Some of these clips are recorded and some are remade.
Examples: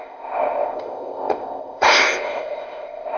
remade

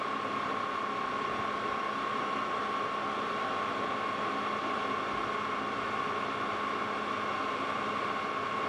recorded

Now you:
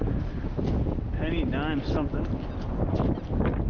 recorded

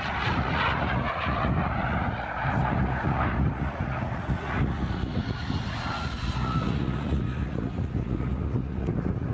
remade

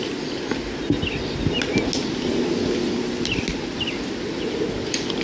recorded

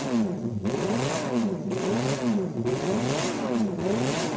remade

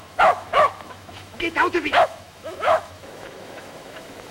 remade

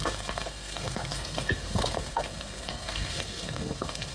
remade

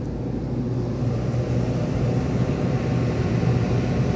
recorded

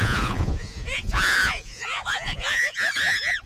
remade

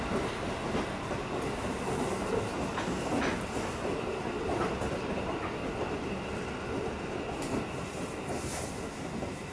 recorded